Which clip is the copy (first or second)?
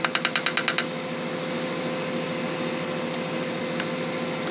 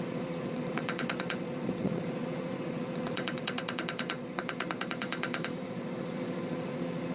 second